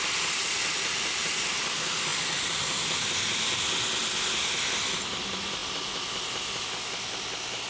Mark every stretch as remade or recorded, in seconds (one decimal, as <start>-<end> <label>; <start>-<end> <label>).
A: 0.0-7.7 recorded